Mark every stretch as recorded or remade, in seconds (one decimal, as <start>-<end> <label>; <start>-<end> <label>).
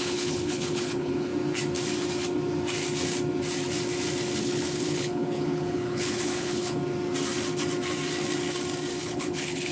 0.0-1.3 remade; 1.3-4.4 recorded; 4.4-6.8 remade; 6.8-9.0 recorded; 9.0-9.7 remade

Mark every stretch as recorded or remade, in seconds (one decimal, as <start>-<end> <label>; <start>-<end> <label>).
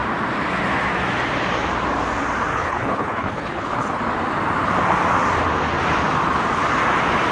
0.0-2.5 recorded; 2.5-4.0 remade; 4.0-7.3 recorded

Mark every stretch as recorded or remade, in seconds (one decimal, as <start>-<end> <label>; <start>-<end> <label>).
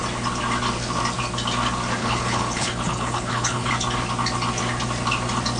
0.0-2.0 recorded; 2.0-3.7 remade; 3.7-5.6 recorded